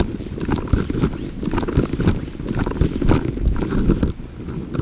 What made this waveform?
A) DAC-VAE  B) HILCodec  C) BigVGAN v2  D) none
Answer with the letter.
D